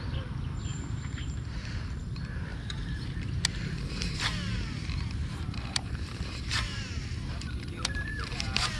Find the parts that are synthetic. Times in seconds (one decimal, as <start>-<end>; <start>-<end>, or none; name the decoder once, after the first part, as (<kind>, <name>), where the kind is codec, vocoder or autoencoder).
0.7-1.7 (vocoder, BigVGAN v2); 2.5-3.4; 4.5-8.2